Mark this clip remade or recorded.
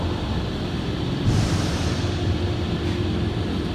recorded